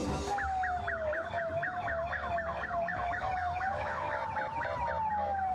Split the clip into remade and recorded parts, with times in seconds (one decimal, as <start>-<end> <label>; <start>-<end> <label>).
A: 0.0-4.2 remade; 4.2-5.1 recorded; 5.1-5.5 remade